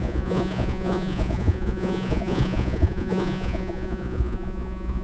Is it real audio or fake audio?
fake